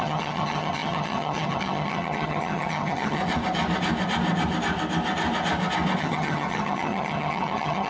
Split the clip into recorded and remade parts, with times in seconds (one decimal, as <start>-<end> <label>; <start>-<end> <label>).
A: 0.0-3.2 remade; 3.2-6.0 recorded; 6.0-7.9 remade